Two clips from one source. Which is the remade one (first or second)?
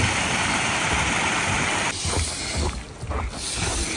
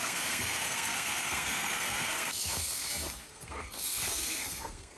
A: second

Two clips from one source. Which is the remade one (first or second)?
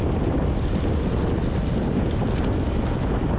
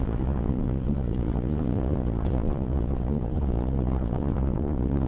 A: second